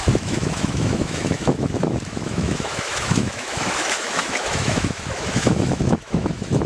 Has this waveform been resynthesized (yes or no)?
yes